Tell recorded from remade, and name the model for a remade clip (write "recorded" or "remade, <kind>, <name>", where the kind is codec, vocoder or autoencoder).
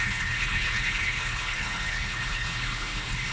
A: remade, codec, HILCodec